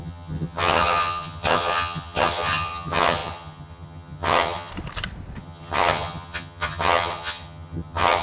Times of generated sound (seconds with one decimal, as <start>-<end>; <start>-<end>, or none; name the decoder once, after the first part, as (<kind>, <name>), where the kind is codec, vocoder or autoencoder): 0.0-4.7 (vocoder, HiFi-GAN); 5.4-8.2